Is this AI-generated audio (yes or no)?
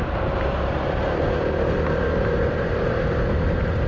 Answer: no